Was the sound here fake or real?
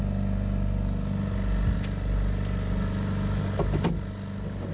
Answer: real